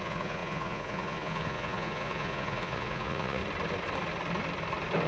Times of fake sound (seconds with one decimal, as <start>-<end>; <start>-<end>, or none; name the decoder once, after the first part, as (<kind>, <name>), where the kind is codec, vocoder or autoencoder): 0.0-3.4 (vocoder, Vocos)